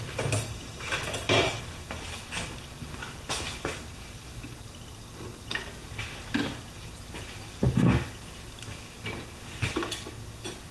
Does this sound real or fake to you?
real